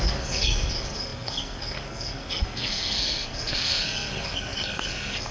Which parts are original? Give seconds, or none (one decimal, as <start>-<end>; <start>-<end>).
none